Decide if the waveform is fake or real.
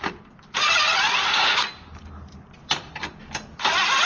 real